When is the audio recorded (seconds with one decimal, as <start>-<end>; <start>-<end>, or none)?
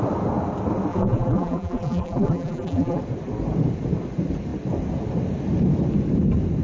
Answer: 0.0-0.9; 3.0-6.6